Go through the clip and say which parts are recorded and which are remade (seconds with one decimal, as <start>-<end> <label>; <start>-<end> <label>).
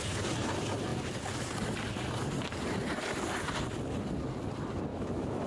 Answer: 0.0-4.9 recorded; 4.9-5.5 remade